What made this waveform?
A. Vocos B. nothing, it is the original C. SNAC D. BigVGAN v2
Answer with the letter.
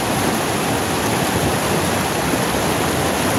B